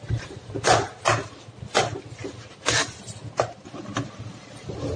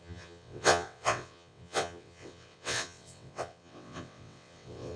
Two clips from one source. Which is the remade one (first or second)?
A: second